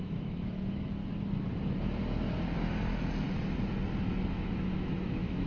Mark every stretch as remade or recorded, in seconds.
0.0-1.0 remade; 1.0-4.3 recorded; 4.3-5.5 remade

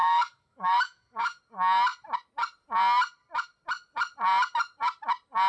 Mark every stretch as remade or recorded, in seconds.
0.0-1.4 remade; 1.4-5.5 recorded